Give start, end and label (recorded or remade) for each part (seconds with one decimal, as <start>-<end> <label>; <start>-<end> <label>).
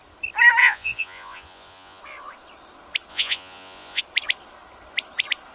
0.0-0.6 recorded; 0.6-2.0 remade; 2.0-3.1 recorded; 3.1-4.0 remade; 4.0-5.5 recorded